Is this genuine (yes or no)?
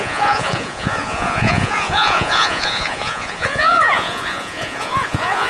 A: no